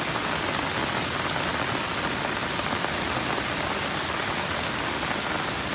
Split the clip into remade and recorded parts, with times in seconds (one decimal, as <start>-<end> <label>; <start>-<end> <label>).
0.0-5.7 recorded